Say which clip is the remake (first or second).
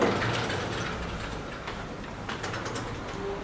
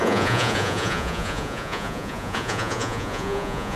second